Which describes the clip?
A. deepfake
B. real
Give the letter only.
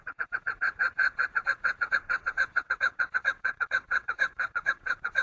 A